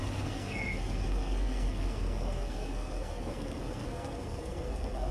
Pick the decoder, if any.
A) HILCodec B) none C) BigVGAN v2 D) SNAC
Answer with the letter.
D